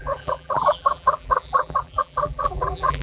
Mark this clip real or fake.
fake